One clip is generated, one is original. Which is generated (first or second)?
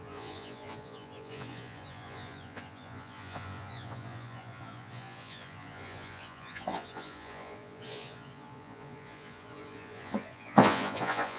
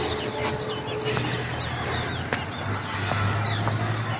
first